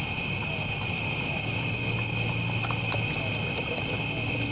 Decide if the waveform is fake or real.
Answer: real